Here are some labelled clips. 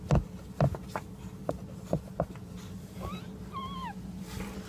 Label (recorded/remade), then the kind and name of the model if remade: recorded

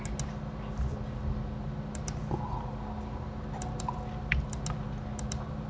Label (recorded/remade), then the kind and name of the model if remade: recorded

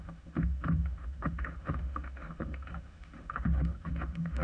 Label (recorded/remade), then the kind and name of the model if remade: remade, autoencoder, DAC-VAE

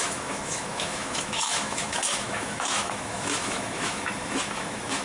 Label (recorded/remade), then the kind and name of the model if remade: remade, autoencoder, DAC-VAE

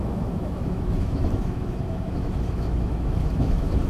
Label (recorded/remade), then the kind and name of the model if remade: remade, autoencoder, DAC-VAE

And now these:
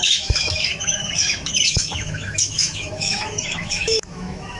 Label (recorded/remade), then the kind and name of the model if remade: remade, autoencoder, DAC-VAE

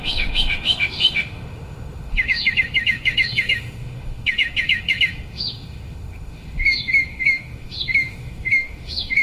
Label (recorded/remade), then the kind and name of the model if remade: remade, autoencoder, DAC-VAE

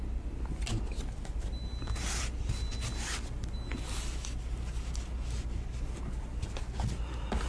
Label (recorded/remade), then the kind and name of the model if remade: recorded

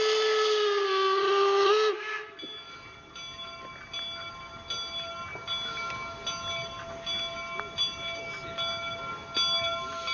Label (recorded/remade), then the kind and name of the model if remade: recorded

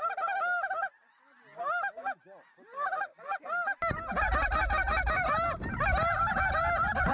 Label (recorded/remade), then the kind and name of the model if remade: recorded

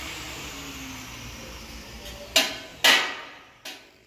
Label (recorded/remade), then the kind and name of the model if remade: recorded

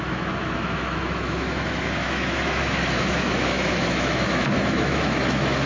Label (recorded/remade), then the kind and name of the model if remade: remade, autoencoder, DAC-VAE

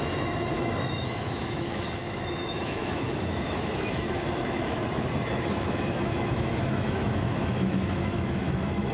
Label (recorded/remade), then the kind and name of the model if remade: remade, autoencoder, DAC-VAE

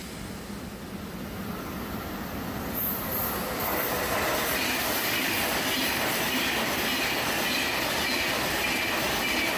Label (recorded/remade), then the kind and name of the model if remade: recorded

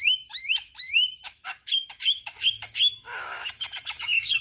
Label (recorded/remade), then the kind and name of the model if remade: remade, autoencoder, DAC-VAE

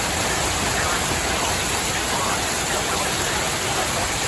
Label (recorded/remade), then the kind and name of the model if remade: recorded